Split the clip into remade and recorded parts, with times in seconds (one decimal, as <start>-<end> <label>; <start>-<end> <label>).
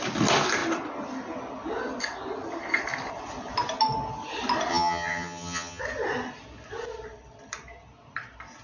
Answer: 0.0-4.7 recorded; 4.7-5.8 remade; 5.8-8.6 recorded